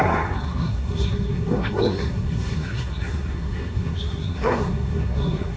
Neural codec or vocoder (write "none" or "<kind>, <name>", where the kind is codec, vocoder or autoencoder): codec, SNAC